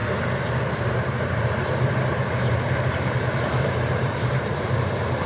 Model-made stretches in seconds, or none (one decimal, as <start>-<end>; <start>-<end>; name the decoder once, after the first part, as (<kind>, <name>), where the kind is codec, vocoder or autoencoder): 0.0-5.3 (vocoder, BigVGAN v2)